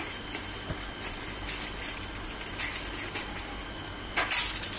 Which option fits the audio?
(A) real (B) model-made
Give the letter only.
A